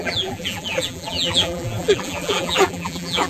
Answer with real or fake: fake